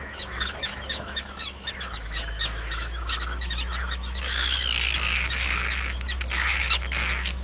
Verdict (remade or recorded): remade